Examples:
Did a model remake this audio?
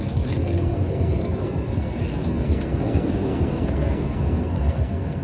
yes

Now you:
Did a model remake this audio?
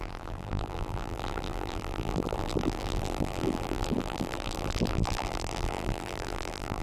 yes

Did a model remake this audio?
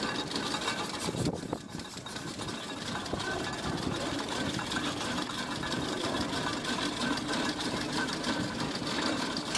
yes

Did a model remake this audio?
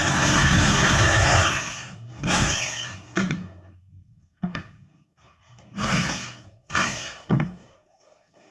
yes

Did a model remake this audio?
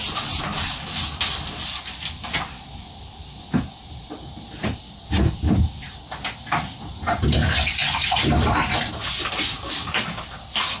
no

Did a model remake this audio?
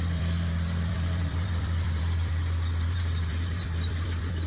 yes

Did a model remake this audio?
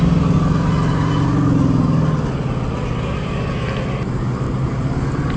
no